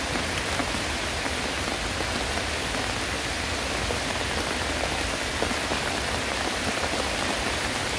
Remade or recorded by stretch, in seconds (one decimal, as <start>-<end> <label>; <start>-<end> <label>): 0.0-8.0 recorded